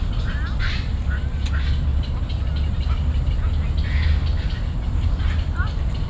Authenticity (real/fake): real